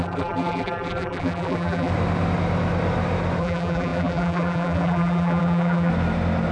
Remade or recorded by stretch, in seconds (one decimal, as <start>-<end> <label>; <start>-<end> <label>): 0.0-1.9 remade; 1.9-3.4 recorded; 3.4-5.9 remade; 5.9-6.5 recorded